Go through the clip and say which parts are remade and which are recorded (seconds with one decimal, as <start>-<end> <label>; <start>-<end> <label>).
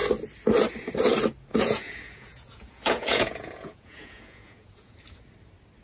0.0-1.5 recorded; 1.5-5.0 remade; 5.0-5.8 recorded